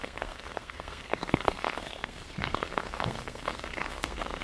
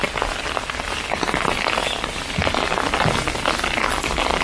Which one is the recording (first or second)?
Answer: second